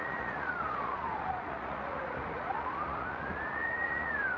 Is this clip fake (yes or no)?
yes